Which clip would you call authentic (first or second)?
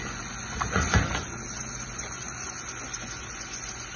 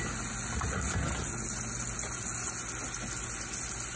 second